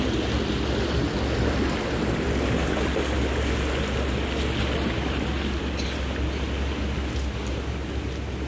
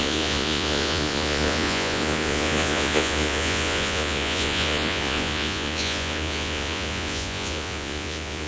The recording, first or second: first